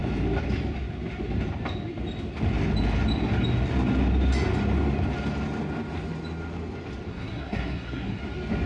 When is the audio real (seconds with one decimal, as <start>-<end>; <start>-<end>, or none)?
0.0-7.1; 8.2-8.7